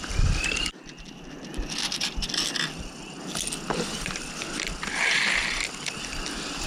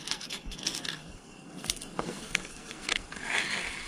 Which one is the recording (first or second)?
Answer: first